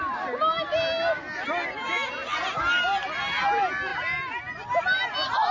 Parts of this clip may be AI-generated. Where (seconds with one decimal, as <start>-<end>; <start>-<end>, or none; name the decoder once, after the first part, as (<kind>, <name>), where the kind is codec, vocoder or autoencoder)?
none